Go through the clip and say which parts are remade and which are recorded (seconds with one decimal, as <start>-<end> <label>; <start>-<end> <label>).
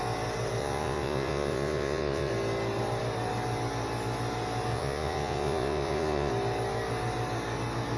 0.0-0.6 recorded; 0.6-2.3 remade; 2.3-4.7 recorded; 4.7-6.3 remade; 6.3-8.0 recorded